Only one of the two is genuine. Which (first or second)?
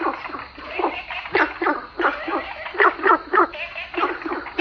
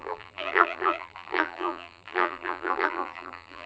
first